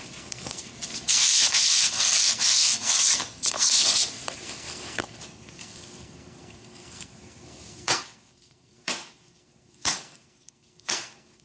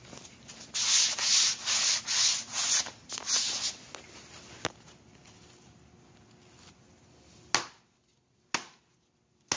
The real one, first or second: second